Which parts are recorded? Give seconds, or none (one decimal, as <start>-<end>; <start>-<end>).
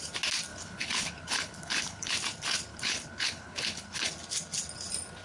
0.0-0.5; 2.1-2.7; 4.1-5.2